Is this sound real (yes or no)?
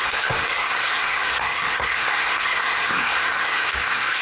no